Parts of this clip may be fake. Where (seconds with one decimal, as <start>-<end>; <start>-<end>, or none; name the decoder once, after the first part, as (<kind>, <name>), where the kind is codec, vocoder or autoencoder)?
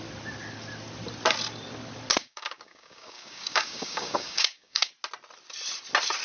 2.2-4.9 (codec, DAC)